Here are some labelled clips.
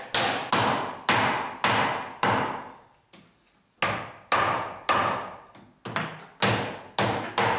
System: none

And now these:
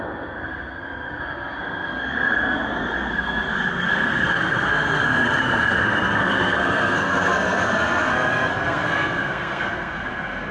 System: codec, SNAC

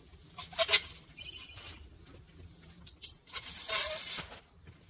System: none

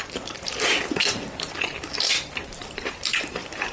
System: vocoder, BigVGAN v2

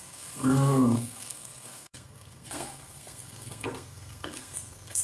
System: codec, SNAC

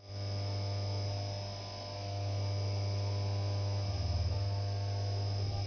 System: none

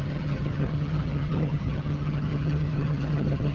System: vocoder, HiFi-GAN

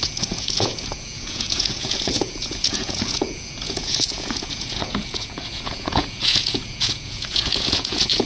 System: vocoder, Vocos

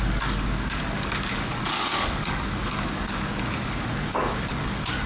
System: codec, DAC